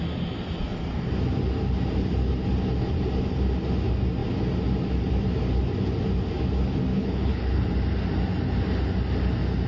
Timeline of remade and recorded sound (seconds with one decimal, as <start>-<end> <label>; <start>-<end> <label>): 0.0-6.9 recorded; 6.9-7.7 remade; 7.7-9.7 recorded

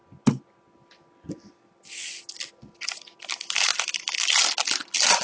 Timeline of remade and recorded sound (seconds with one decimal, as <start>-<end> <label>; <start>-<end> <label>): 0.0-5.2 recorded